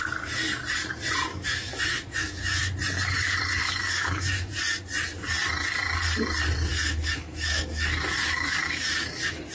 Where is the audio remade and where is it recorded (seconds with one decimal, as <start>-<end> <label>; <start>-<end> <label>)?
0.0-1.3 recorded; 1.3-2.6 remade; 2.6-3.6 recorded; 3.6-4.5 remade; 4.5-6.7 recorded; 6.7-9.5 remade